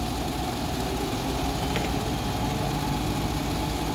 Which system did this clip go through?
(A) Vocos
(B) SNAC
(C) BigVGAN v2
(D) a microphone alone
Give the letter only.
D